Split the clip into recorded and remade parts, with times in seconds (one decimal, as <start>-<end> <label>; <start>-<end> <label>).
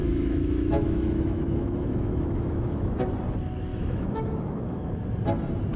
0.0-3.0 remade; 3.0-3.7 recorded; 3.7-4.9 remade; 4.9-5.8 recorded